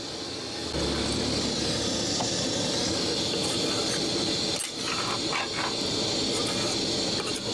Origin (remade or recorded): recorded